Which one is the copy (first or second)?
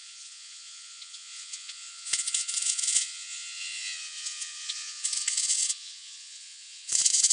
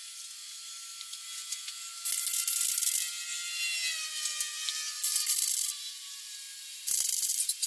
first